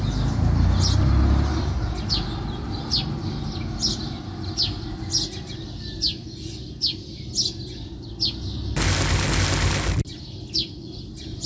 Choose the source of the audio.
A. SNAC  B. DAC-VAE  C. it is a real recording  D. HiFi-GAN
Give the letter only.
C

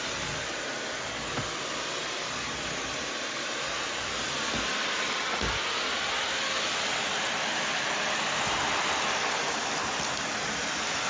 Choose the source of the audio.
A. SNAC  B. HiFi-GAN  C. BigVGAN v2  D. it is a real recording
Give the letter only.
D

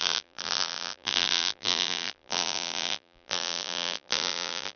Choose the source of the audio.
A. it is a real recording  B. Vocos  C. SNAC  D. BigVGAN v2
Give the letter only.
D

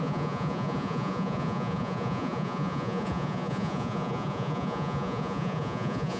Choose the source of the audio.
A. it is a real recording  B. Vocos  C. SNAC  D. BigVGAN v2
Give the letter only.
B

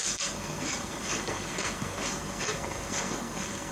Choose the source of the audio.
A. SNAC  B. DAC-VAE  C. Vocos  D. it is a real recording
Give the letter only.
A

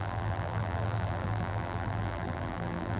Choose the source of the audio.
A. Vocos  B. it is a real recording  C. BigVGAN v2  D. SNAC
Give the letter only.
C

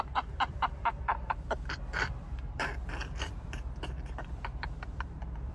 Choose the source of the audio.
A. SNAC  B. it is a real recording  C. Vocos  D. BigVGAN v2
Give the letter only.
D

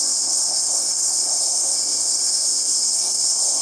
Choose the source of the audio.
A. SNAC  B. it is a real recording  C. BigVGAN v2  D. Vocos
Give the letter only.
A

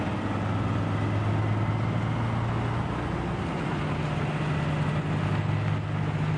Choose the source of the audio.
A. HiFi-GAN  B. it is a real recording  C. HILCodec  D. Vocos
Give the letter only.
B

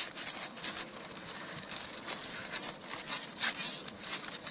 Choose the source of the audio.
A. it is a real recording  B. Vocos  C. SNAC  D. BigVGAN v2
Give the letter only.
A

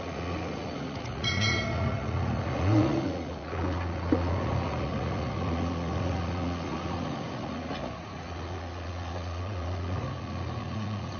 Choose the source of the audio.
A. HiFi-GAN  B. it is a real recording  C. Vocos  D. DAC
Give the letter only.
C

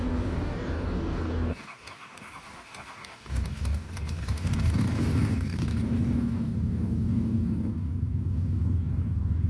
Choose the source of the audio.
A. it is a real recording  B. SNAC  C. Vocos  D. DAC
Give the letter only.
D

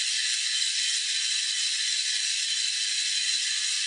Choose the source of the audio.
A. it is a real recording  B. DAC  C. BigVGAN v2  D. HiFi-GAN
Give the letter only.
A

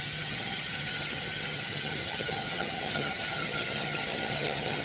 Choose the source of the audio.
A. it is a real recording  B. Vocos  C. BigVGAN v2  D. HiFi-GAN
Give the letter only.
D